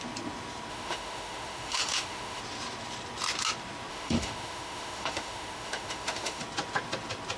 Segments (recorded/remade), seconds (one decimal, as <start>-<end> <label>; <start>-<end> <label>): 0.0-0.7 recorded; 0.7-2.4 remade; 2.4-3.9 recorded; 3.9-6.4 remade; 6.4-7.4 recorded